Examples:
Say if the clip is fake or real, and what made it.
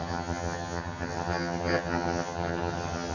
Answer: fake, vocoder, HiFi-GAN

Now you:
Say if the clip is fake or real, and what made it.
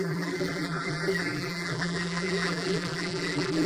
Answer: fake, vocoder, BigVGAN v2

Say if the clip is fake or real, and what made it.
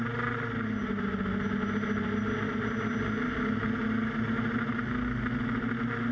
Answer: real